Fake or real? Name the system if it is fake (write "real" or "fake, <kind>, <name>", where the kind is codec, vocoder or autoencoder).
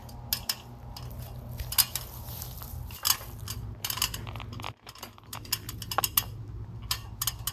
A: real